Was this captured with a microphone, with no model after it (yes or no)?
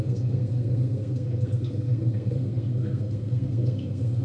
no